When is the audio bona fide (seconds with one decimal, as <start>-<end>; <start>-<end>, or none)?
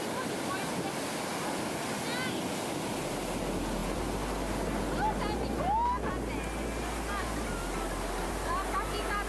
0.0-9.3